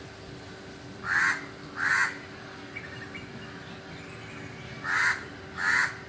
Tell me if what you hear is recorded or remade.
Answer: recorded